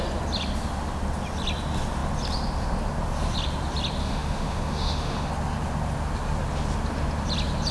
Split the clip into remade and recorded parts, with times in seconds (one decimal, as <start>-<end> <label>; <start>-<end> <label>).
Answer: 0.0-4.0 recorded; 4.0-5.3 remade; 5.3-7.7 recorded